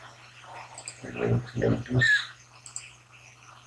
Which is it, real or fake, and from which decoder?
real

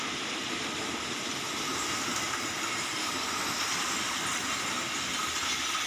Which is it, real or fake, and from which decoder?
real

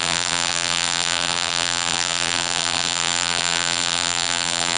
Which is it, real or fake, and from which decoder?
fake, vocoder, BigVGAN v2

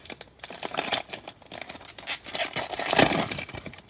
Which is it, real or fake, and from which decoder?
fake, vocoder, BigVGAN v2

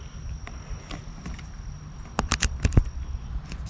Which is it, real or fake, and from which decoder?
real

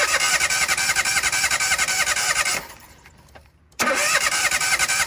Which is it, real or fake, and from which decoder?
fake, vocoder, BigVGAN v2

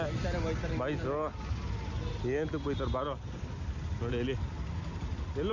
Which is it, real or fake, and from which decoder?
real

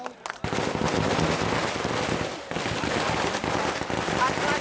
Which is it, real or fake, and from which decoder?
real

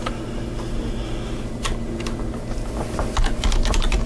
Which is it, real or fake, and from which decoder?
real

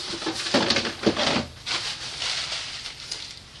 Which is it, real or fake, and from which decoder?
fake, vocoder, BigVGAN v2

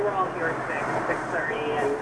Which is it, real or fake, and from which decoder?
real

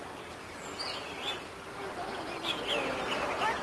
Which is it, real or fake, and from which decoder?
real